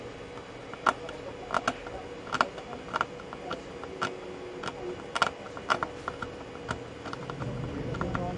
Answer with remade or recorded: recorded